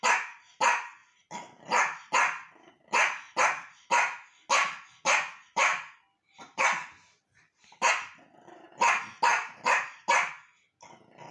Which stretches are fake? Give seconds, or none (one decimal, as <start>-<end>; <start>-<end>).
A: 5.7-7.9; 9.3-10.3